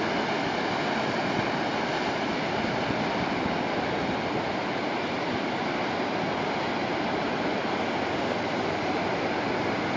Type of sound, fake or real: real